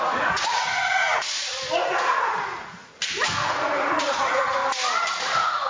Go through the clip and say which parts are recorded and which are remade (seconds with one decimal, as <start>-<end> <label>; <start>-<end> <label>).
0.0-1.5 remade; 1.5-2.1 recorded; 2.1-2.8 remade; 2.8-3.5 recorded; 3.5-4.6 remade; 4.6-5.2 recorded; 5.2-5.7 remade